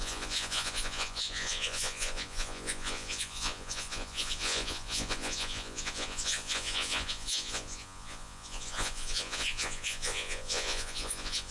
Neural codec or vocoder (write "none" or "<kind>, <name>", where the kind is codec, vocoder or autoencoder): vocoder, Vocos